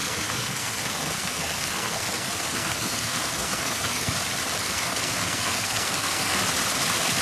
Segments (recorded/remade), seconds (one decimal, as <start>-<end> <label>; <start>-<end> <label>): 0.0-4.1 remade; 4.1-4.6 recorded; 4.6-6.4 remade; 6.4-7.2 recorded